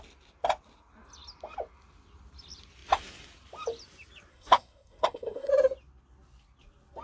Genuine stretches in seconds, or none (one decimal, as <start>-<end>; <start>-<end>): 0.0-4.3; 5.5-7.0